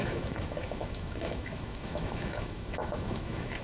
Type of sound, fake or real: fake